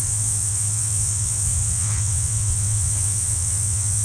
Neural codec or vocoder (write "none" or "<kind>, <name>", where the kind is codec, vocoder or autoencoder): vocoder, WaveNeXt